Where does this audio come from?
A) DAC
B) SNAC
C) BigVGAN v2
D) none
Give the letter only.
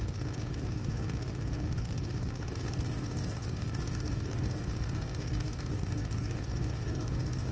A